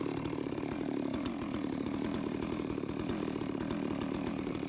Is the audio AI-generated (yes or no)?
yes